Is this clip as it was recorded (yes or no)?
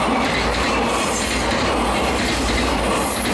yes